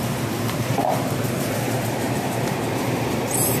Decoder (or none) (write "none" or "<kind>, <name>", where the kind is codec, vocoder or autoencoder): vocoder, BigVGAN v2